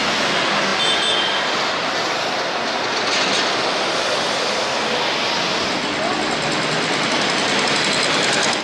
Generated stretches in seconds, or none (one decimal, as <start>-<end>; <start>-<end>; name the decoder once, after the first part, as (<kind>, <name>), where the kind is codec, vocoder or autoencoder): none